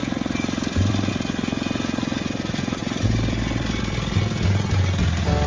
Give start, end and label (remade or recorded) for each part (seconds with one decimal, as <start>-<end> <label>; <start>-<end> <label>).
0.0-1.1 remade; 1.1-2.8 recorded; 2.8-3.8 remade; 3.8-5.5 recorded